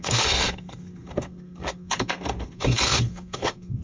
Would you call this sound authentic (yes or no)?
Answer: no